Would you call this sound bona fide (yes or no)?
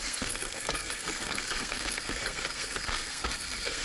no